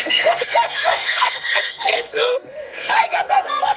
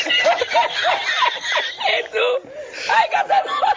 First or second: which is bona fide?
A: second